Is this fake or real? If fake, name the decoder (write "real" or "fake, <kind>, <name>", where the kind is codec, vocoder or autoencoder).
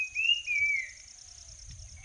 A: real